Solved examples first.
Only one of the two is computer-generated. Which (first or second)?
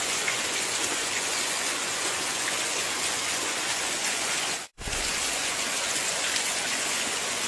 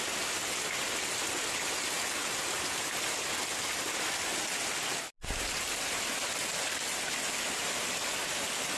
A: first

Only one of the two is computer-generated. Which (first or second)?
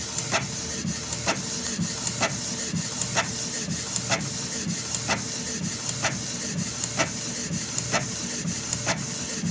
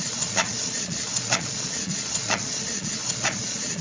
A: second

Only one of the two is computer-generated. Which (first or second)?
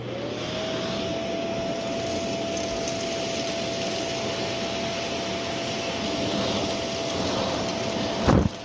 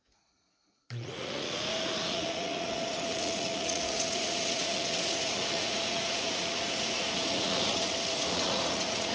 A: second